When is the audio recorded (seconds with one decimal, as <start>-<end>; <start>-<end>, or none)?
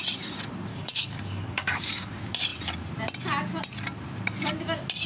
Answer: 0.0-0.7; 2.1-5.1